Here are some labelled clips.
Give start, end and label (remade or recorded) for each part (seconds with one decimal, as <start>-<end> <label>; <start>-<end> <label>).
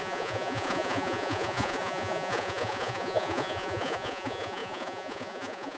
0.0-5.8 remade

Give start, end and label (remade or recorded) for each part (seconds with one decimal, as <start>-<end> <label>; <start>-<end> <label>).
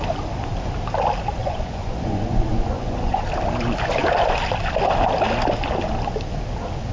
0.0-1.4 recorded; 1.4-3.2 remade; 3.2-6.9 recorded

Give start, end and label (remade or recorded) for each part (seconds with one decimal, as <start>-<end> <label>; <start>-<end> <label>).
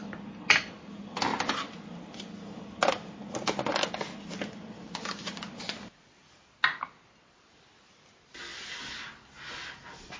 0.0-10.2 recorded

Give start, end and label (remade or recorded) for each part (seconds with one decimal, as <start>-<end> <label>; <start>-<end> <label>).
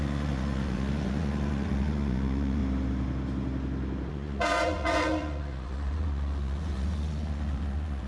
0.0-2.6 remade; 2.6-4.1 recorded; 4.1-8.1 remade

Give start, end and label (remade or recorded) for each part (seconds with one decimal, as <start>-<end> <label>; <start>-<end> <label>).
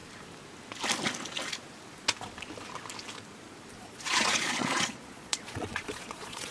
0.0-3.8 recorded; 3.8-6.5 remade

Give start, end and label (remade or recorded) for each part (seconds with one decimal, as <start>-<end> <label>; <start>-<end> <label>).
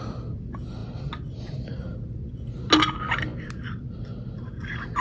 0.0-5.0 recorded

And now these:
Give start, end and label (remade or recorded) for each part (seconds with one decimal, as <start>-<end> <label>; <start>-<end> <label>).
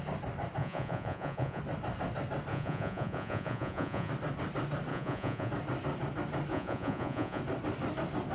0.0-0.6 recorded; 0.6-1.6 remade; 1.6-2.5 recorded; 2.5-4.1 remade; 4.1-4.9 recorded; 4.9-5.5 remade; 5.5-6.5 recorded; 6.5-7.4 remade; 7.4-8.3 recorded